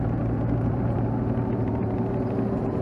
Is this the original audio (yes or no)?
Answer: no